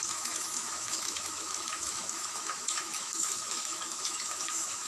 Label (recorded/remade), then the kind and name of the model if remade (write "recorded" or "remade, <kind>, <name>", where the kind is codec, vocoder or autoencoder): remade, autoencoder, DAC-VAE